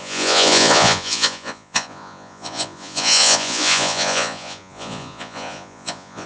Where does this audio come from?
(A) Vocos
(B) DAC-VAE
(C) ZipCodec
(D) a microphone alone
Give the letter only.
A